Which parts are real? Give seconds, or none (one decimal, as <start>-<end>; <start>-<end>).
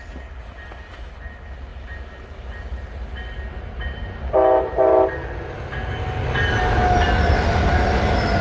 0.0-8.4